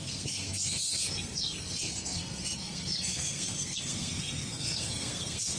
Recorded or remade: remade